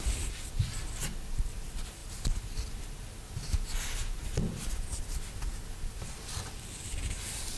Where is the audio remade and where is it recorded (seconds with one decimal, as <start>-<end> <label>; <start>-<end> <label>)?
0.0-7.6 recorded